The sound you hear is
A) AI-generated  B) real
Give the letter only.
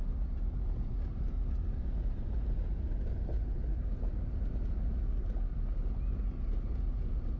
B